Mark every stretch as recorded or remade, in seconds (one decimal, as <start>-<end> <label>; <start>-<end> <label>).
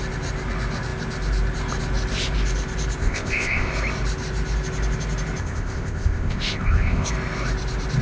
0.0-3.0 recorded; 3.0-3.7 remade; 3.7-5.4 recorded; 5.4-7.1 remade; 7.1-8.0 recorded